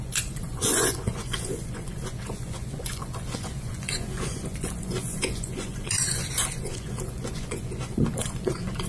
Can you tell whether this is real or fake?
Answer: fake